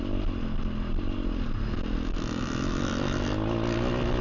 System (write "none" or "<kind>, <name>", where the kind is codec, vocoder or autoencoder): none